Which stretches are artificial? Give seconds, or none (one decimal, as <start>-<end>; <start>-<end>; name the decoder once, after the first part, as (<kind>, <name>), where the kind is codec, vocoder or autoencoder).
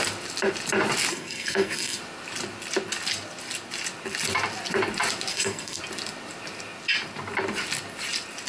1.1-2.0 (codec, SNAC); 5.3-5.8